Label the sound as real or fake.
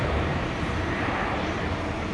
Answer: fake